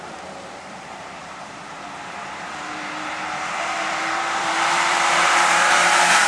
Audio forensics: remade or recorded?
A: remade